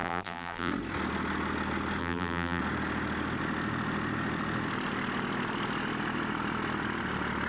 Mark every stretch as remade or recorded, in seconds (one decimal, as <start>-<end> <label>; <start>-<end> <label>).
0.0-0.7 remade; 0.7-2.0 recorded; 2.0-2.6 remade; 2.6-7.5 recorded